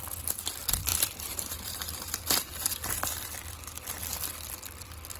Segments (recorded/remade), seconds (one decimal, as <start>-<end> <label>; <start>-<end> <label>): 0.0-5.2 recorded